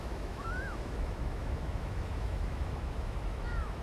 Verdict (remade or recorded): remade